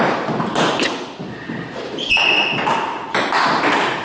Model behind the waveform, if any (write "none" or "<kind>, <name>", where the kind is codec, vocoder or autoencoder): none